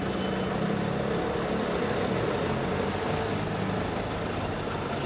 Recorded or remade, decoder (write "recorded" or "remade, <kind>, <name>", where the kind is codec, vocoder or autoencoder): recorded